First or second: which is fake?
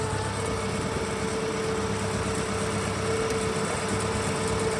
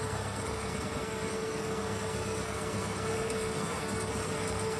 second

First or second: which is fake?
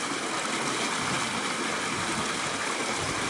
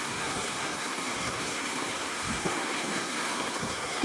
second